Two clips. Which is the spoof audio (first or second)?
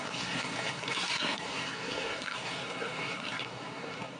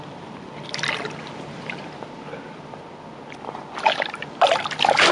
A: first